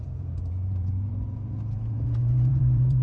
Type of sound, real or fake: fake